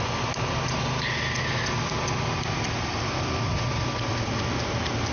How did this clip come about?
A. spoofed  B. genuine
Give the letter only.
B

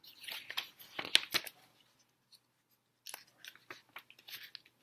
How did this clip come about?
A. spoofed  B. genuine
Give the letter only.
B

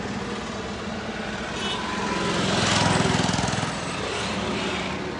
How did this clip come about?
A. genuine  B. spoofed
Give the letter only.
A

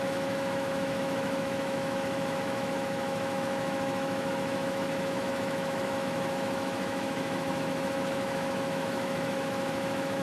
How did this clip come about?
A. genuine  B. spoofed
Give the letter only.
B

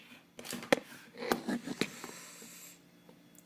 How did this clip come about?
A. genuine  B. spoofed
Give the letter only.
A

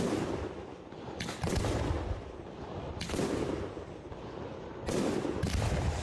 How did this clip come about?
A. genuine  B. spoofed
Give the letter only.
A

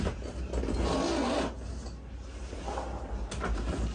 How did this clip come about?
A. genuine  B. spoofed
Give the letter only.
A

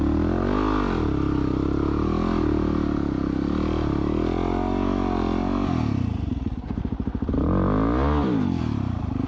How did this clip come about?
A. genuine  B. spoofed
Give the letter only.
A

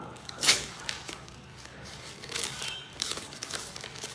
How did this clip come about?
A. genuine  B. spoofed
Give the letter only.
B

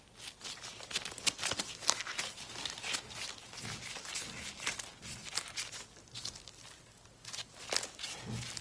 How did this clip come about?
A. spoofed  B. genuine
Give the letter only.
B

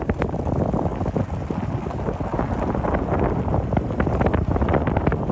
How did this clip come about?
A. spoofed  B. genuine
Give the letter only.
B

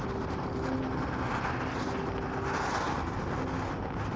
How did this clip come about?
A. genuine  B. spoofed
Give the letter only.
A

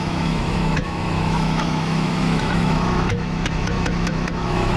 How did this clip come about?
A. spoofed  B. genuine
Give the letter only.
A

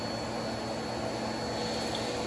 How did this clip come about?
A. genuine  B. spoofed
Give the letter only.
A